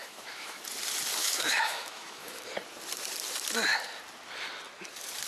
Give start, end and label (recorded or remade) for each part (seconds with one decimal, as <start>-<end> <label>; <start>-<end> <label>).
0.0-0.6 remade; 0.6-1.2 recorded; 1.2-2.5 remade; 2.5-5.3 recorded

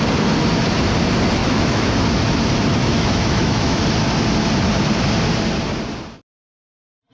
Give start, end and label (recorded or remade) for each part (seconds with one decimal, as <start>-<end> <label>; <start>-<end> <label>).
0.0-1.4 recorded; 1.4-2.0 remade; 2.0-2.8 recorded; 2.8-3.8 remade; 3.8-7.1 recorded

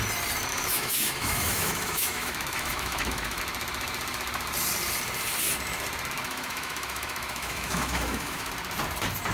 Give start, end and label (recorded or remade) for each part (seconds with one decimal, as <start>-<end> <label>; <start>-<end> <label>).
0.0-0.5 recorded; 0.5-3.4 remade; 3.4-6.2 recorded; 6.2-8.5 remade; 8.5-9.3 recorded

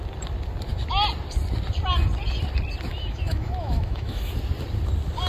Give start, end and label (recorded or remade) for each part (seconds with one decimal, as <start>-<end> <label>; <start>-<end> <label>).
0.0-2.9 recorded; 2.9-4.3 remade; 4.3-5.3 recorded

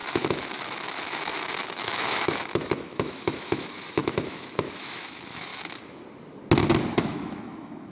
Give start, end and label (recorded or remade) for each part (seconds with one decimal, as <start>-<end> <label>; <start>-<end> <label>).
0.0-5.5 remade; 5.5-7.0 recorded; 7.0-7.9 remade

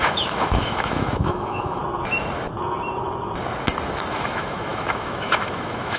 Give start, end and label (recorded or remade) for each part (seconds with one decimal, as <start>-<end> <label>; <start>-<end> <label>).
0.0-1.8 remade; 1.8-4.1 recorded; 4.1-6.0 remade